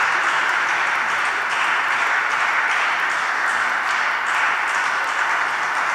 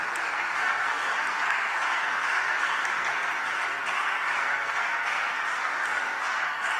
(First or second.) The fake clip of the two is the second